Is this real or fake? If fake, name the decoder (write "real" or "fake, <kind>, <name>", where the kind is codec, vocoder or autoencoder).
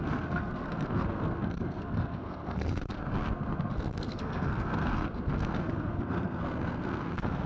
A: fake, codec, SNAC